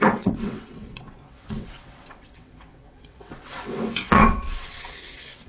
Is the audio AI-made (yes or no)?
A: yes